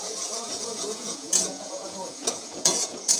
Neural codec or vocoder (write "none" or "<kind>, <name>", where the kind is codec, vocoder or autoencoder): vocoder, Vocos